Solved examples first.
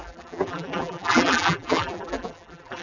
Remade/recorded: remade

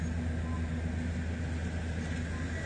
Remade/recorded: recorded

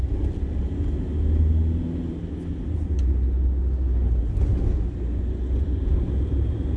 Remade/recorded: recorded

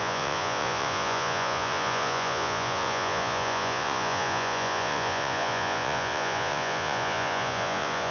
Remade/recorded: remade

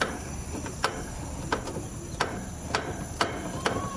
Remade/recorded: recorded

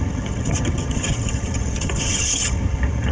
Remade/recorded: remade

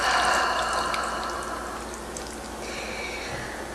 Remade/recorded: recorded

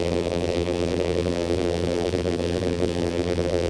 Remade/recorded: remade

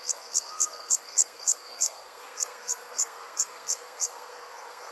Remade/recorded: remade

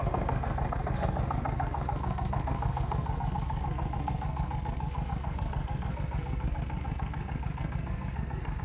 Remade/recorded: remade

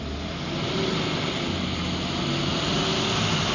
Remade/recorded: recorded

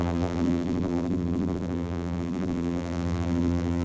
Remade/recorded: remade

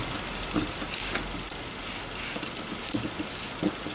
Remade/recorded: recorded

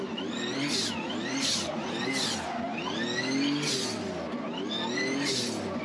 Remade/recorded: recorded